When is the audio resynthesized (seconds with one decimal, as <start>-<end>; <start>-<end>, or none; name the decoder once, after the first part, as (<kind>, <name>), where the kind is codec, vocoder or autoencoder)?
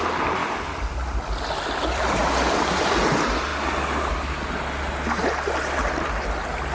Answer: 0.4-2.7 (vocoder, BigVGAN v2)